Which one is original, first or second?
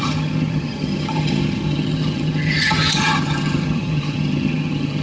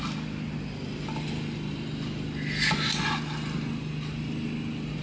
second